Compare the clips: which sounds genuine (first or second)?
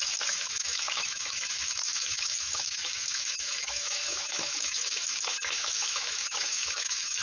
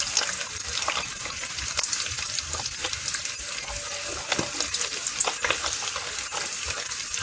second